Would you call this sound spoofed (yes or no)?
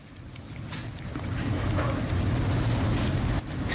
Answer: no